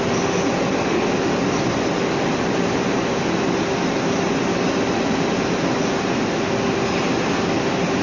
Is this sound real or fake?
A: real